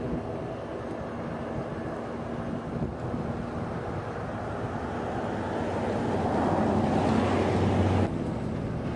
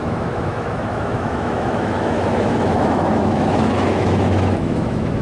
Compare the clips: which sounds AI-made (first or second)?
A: second